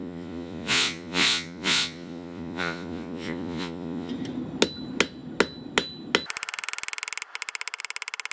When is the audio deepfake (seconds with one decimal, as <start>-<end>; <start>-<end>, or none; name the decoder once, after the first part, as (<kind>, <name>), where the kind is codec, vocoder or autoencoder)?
0.0-4.1 (vocoder, Vocos)